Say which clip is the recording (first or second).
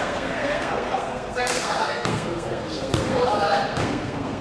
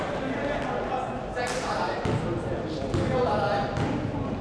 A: second